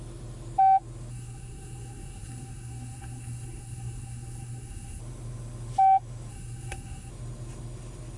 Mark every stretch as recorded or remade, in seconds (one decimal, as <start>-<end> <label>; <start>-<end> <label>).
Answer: 0.0-1.1 recorded; 1.1-5.0 remade; 5.0-6.3 recorded; 6.3-7.1 remade; 7.1-8.2 recorded